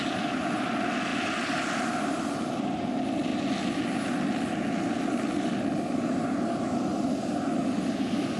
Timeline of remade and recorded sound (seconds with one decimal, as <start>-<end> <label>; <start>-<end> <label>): 0.0-8.4 recorded